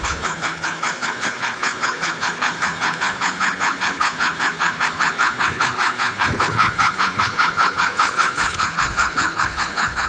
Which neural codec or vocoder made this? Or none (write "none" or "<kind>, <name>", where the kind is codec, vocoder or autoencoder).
codec, HILCodec